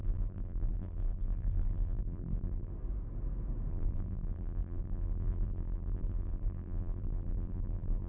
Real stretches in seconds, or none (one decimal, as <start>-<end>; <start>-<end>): 2.7-3.7